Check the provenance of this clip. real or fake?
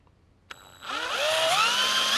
real